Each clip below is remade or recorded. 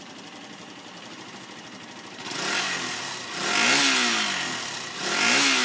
recorded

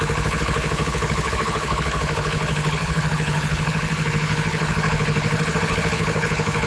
remade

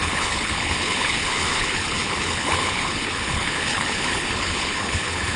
remade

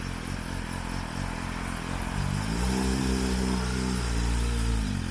recorded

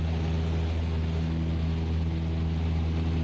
recorded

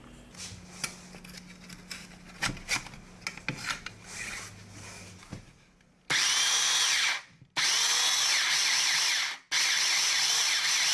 recorded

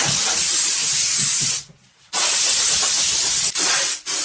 recorded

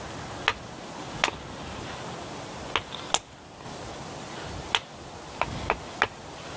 recorded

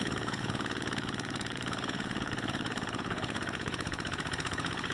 remade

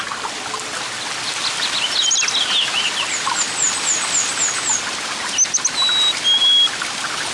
recorded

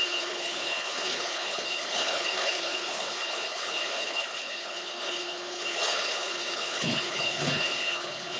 remade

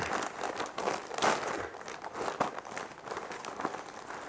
recorded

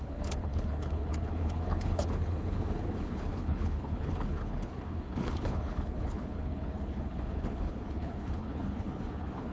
remade